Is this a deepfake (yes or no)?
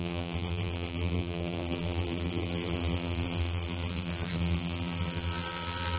yes